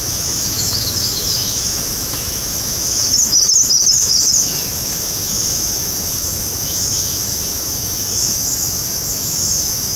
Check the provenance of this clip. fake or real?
fake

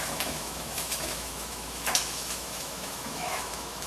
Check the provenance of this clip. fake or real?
fake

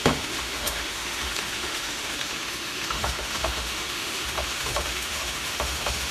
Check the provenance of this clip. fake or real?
fake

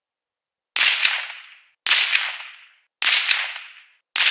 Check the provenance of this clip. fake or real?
real